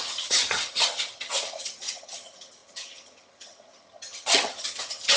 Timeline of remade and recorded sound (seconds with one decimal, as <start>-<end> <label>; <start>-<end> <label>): 0.0-5.2 remade